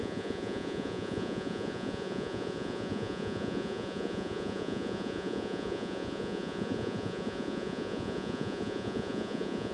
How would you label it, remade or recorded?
remade